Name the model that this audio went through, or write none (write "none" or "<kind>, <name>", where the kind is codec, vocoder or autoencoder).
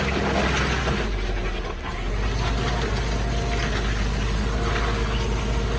none